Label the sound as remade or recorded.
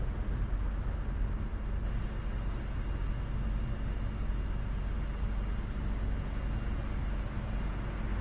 recorded